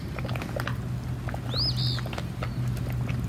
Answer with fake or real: real